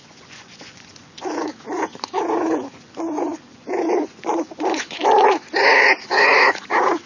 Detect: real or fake fake